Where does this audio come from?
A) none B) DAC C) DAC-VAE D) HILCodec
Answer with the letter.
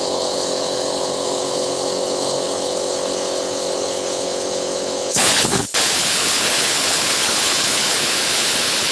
D